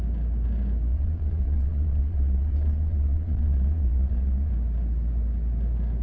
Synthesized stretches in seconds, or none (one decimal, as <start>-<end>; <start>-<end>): 0.9-4.5